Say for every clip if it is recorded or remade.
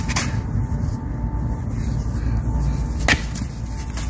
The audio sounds recorded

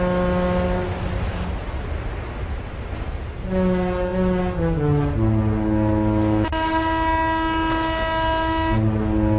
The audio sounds recorded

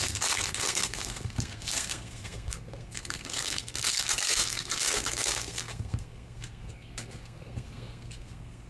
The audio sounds remade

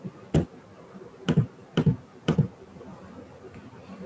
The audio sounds recorded